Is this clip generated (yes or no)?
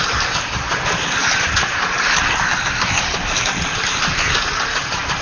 no